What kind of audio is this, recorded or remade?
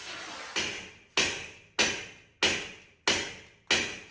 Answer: recorded